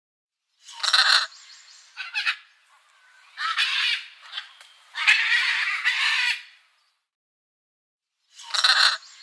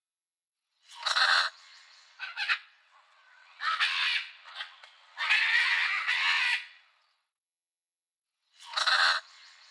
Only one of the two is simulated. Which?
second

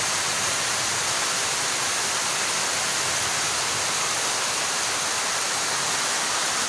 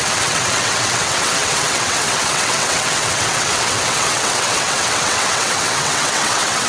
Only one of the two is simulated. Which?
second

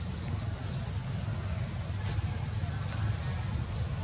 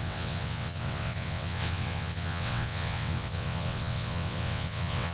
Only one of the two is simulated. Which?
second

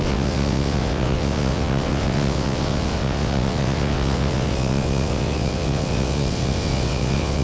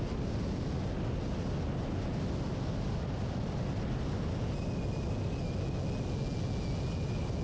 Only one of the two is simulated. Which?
first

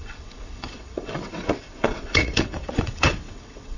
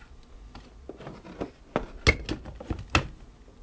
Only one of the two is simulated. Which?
first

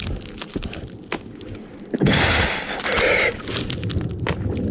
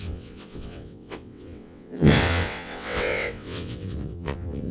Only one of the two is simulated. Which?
second